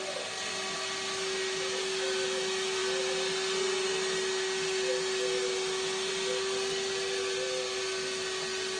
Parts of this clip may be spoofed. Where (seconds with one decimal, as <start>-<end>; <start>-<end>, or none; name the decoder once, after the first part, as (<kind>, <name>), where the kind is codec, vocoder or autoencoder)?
none